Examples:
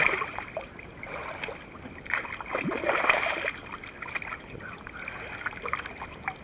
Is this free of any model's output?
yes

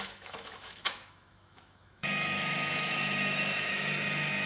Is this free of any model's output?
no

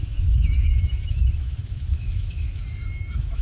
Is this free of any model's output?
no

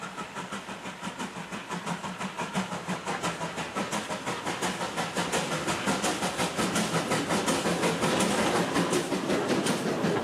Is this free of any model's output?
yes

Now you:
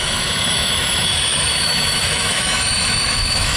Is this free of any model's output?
no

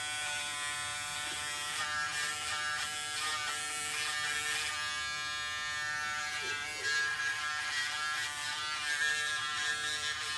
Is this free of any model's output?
yes